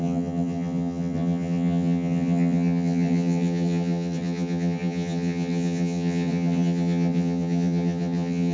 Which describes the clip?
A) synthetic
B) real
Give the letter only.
A